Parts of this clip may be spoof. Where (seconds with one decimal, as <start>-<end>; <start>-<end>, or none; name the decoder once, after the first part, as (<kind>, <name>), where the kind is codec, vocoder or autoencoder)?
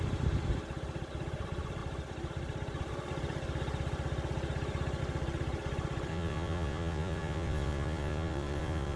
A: 6.1-9.0 (vocoder, Vocos)